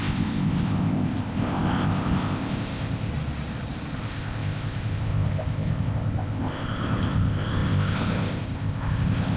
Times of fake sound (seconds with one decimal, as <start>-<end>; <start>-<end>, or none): 0.0-3.1; 4.0-9.4